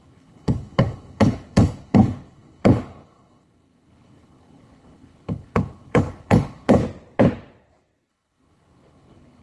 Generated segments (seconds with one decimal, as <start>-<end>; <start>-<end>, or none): 0.0-6.8; 8.1-9.4